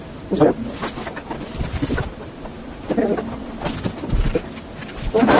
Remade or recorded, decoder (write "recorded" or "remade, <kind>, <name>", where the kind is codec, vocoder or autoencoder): recorded